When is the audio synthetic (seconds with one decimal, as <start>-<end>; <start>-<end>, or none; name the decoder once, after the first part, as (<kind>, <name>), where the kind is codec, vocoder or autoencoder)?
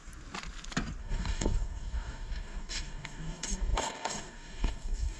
1.0-5.2 (codec, DAC)